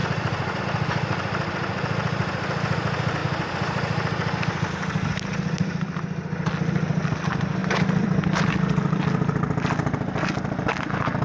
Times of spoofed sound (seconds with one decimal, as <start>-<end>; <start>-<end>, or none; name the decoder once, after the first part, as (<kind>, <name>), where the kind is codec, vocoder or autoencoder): 0.0-0.6 (vocoder, BigVGAN v2); 7.6-10.7